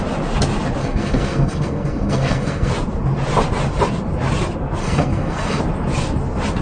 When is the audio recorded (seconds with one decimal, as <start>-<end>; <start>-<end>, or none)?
0.0-0.8; 2.7-4.8; 5.6-6.6